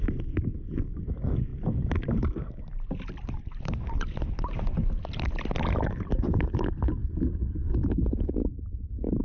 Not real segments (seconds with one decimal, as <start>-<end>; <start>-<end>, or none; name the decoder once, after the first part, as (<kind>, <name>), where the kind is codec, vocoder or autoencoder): none